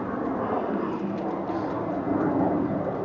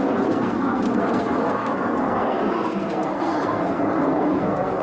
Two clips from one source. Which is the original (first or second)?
first